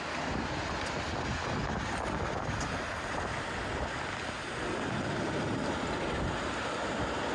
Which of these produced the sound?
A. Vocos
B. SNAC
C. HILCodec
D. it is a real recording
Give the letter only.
D